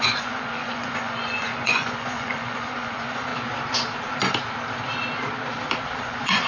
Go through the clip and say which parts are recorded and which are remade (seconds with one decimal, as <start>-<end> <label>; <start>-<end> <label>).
0.0-3.3 remade; 3.3-6.0 recorded; 6.0-6.5 remade